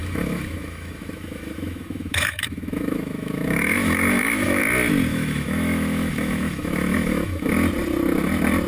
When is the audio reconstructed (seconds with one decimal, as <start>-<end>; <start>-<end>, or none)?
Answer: 0.0-4.6; 5.1-7.5